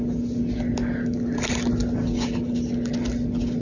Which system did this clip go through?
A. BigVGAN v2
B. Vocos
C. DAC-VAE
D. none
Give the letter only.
D